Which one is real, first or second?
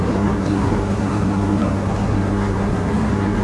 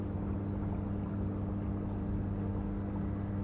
second